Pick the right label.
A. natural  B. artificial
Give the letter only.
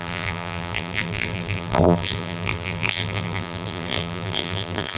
B